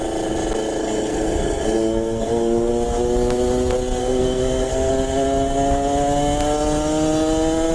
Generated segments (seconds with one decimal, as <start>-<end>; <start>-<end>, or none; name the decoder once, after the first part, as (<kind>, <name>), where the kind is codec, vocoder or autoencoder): 0.8-2.7 (codec, SNAC); 4.0-4.9